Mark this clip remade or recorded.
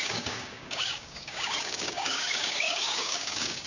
remade